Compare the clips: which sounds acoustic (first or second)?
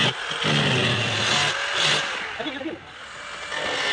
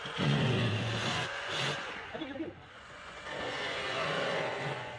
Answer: first